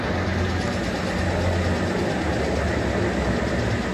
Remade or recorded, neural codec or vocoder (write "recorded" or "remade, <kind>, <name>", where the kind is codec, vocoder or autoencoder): recorded